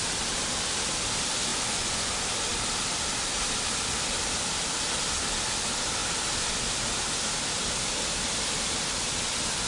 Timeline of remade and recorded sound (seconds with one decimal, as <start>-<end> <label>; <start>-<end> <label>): 0.0-1.5 recorded; 1.5-2.1 remade; 2.1-9.7 recorded